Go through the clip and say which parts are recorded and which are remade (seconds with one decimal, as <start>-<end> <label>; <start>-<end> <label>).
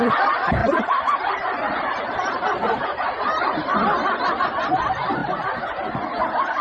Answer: 0.0-0.6 recorded; 0.6-4.4 remade; 4.4-5.2 recorded; 5.2-5.9 remade; 5.9-6.6 recorded